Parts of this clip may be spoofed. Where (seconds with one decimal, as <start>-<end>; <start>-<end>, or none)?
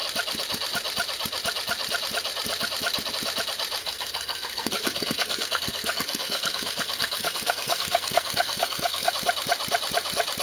3.8-9.1